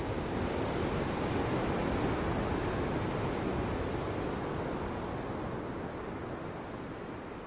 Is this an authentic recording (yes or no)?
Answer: yes